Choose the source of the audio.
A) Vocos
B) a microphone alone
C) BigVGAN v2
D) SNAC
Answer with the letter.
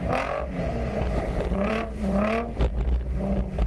C